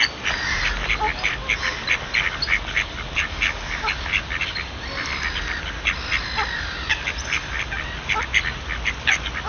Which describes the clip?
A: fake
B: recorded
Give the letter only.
B